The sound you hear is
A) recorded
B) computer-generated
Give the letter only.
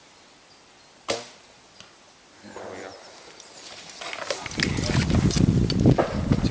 A